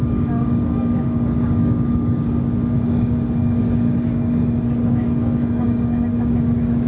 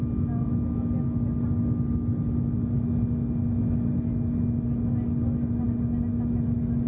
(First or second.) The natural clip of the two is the second